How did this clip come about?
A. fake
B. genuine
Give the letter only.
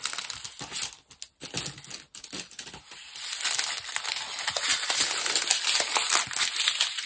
B